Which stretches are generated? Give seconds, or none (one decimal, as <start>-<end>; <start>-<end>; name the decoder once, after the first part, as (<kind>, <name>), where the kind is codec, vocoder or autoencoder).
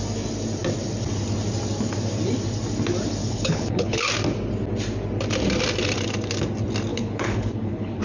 3.2-4.0 (codec, HILCodec); 6.9-8.0